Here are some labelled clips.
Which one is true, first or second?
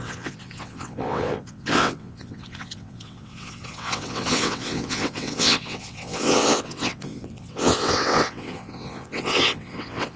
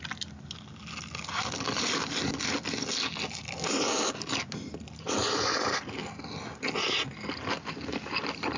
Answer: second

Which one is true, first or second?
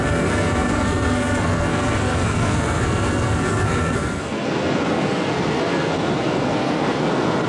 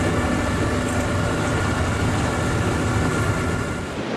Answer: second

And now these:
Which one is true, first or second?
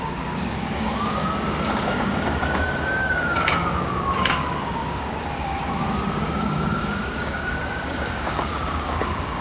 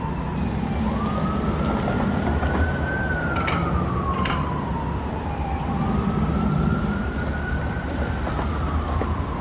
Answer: second